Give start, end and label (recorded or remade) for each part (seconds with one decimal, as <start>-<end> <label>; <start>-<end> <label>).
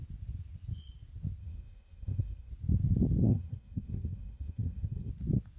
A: 0.0-1.4 recorded; 1.4-2.5 remade; 2.5-3.2 recorded; 3.2-5.1 remade; 5.1-5.6 recorded